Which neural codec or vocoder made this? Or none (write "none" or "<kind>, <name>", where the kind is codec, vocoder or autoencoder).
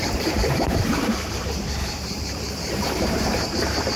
vocoder, BigVGAN v2